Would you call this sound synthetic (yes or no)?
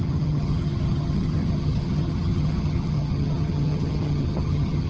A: yes